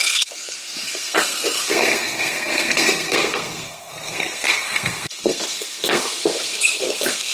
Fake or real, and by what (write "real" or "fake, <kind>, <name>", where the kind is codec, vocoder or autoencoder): fake, codec, SNAC